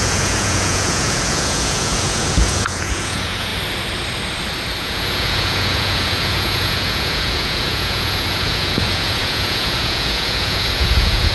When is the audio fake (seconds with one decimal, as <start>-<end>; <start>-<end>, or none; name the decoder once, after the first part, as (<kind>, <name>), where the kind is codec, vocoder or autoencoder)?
0.0-3.5 (vocoder, Vocos); 4.8-11.3